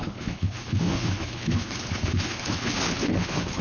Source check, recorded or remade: remade